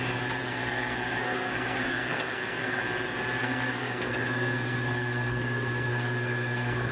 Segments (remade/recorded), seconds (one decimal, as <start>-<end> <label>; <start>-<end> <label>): 0.0-0.4 recorded; 0.4-2.8 remade; 2.8-3.4 recorded; 3.4-6.9 remade